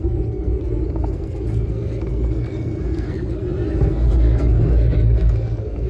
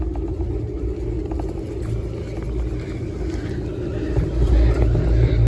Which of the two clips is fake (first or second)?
first